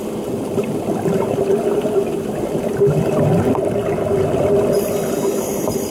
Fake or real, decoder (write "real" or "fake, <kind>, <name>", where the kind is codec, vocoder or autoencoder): real